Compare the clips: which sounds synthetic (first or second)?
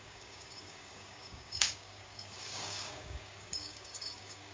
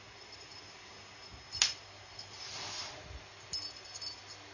first